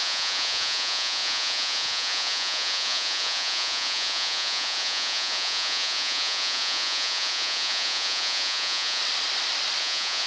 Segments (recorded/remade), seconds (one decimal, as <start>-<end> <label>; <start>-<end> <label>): 0.0-9.0 remade; 9.0-9.8 recorded; 9.8-10.3 remade